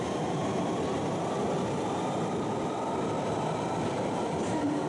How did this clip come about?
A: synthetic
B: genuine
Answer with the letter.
A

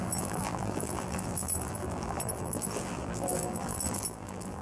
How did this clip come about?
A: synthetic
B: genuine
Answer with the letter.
A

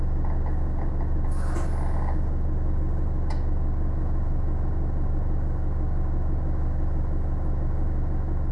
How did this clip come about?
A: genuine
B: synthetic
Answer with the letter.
A